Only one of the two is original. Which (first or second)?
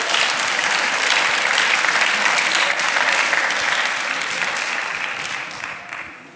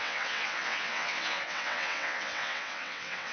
first